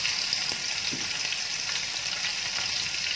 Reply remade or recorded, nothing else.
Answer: recorded